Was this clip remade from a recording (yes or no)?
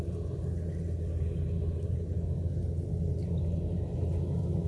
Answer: no